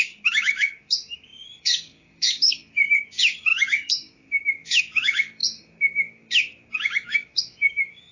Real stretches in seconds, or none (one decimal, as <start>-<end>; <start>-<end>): none